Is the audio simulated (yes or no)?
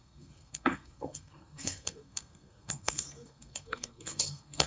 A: yes